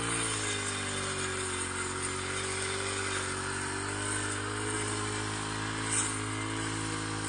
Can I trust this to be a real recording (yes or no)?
yes